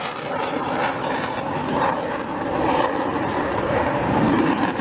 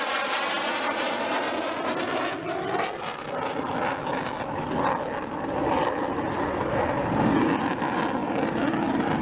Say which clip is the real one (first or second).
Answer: second